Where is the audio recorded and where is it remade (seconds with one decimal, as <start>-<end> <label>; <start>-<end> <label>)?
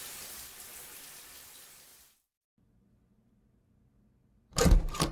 0.0-5.1 recorded